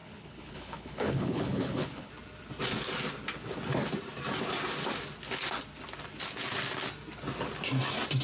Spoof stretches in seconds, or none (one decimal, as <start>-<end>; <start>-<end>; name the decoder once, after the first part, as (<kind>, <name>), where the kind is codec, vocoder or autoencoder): 0.0-2.1 (codec, HILCodec)